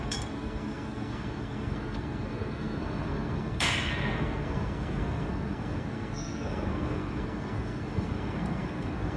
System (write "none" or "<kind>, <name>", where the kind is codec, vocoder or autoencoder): codec, SNAC